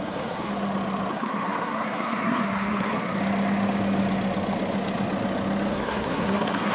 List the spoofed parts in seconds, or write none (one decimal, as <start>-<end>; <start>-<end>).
0.0-0.5; 1.1-3.2; 5.7-6.7